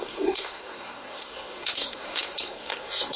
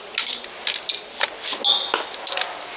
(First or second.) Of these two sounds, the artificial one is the first